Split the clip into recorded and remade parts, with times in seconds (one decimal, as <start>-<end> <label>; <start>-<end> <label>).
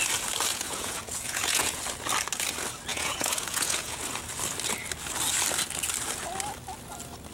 0.0-0.5 recorded; 0.5-1.8 remade; 1.8-2.9 recorded; 2.9-4.0 remade; 4.0-7.3 recorded